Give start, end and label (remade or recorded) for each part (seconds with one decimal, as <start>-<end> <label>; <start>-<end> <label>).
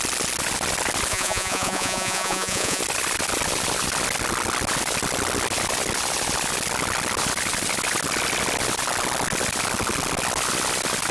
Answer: 0.0-1.1 recorded; 1.1-2.8 remade; 2.8-11.1 recorded